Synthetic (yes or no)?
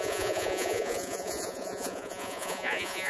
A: yes